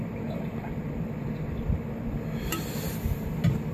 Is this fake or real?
real